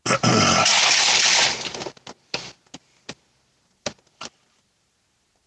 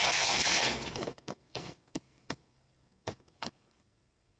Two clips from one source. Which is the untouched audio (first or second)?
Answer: first